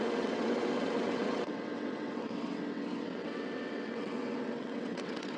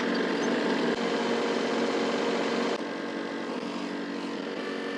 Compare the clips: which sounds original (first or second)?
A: second